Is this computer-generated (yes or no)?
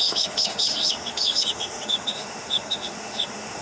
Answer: yes